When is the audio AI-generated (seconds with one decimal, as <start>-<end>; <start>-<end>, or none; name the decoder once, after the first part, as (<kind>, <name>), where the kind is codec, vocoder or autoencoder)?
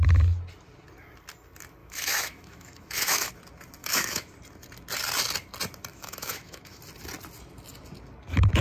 1.8-3.3 (autoencoder, DAC-VAE); 3.8-4.3; 5.9-6.8